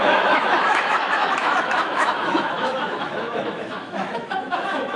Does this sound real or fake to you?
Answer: fake